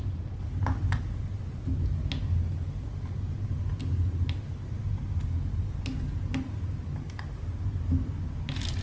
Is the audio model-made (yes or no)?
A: no